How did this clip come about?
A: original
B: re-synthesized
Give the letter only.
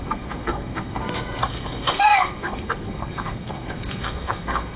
B